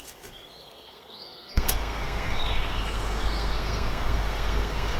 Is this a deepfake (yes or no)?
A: yes